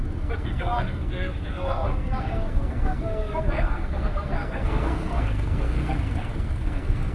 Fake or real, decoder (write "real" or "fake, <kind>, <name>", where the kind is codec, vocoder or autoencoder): fake, codec, SNAC